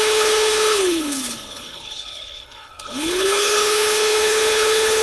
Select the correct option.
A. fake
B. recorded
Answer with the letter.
A